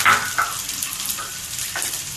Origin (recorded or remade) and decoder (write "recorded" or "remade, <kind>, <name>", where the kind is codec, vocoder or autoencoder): remade, vocoder, BigVGAN v2